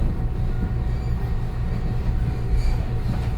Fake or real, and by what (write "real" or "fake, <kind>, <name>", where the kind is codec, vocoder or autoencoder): real